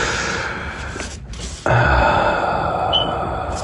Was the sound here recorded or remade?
recorded